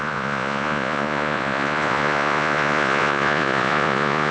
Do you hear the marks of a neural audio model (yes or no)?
yes